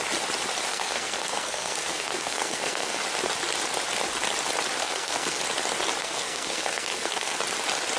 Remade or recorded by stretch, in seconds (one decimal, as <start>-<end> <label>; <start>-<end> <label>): 0.0-0.7 recorded; 0.7-3.0 remade; 3.0-4.8 recorded; 4.8-5.4 remade; 5.4-6.0 recorded; 6.0-7.4 remade; 7.4-8.0 recorded